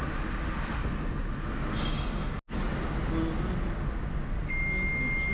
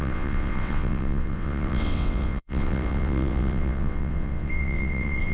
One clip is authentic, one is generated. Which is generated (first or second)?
second